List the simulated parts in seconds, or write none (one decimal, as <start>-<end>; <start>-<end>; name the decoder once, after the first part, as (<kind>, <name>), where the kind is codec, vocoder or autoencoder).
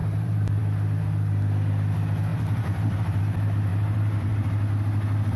0.0-0.6 (vocoder, BigVGAN v2); 2.3-3.2; 3.7-4.3